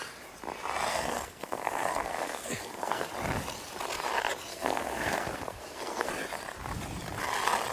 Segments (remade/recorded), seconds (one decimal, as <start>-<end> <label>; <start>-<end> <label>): 0.0-0.9 recorded; 0.9-3.1 remade; 3.1-4.5 recorded; 4.5-6.1 remade; 6.1-7.7 recorded